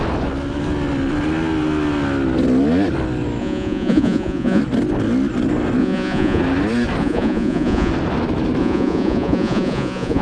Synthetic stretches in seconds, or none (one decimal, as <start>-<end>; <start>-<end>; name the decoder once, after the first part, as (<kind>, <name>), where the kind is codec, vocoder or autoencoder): 3.4-4.6 (vocoder, Vocos); 5.8-6.4; 7.0-7.9; 8.6-10.2